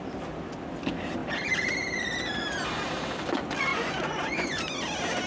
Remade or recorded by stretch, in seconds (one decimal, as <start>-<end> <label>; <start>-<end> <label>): 0.0-3.7 recorded; 3.7-4.6 remade; 4.6-5.3 recorded